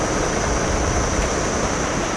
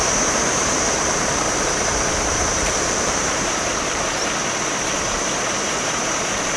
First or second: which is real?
first